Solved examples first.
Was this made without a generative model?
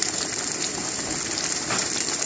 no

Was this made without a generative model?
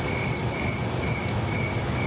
yes